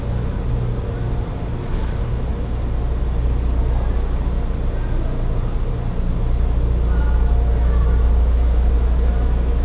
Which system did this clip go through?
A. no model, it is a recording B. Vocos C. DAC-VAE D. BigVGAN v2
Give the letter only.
A